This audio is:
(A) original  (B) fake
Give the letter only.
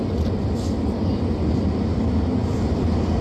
A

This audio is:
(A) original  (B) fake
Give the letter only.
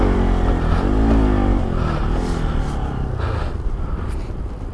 A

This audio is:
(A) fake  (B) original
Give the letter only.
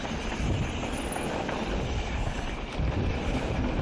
A